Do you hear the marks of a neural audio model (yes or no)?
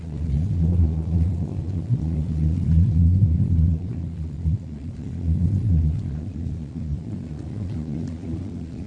yes